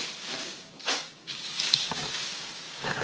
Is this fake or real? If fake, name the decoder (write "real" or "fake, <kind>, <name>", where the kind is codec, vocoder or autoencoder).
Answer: fake, codec, DAC